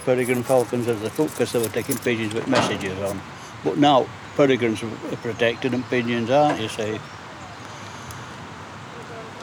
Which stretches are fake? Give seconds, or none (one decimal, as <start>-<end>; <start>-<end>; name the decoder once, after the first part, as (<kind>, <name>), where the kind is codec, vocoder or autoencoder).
0.0-3.3 (vocoder, Vocos); 4.1-5.0